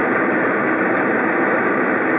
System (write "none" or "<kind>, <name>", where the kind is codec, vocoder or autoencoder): vocoder, BigVGAN v2